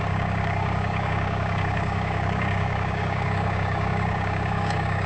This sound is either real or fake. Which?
fake